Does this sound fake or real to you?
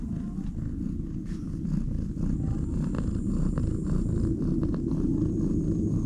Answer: real